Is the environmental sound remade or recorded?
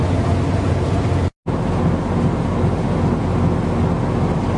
recorded